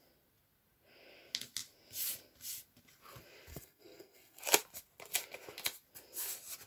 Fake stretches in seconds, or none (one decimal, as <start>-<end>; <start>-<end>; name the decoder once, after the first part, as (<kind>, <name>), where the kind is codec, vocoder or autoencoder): 3.5-4.4 (codec, SNAC)